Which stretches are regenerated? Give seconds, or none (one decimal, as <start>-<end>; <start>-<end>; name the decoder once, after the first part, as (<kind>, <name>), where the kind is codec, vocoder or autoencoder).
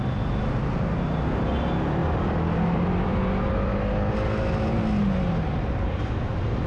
none